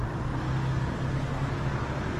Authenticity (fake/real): real